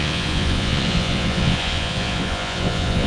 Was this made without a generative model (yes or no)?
no